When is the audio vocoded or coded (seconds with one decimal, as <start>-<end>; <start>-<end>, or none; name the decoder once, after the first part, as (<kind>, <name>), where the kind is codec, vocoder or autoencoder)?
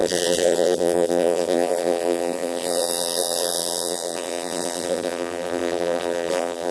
0.0-6.7 (vocoder, BigVGAN v2)